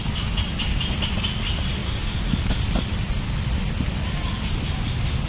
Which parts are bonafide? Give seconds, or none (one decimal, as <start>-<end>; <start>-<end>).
0.0-5.3